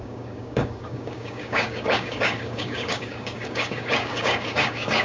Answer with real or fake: fake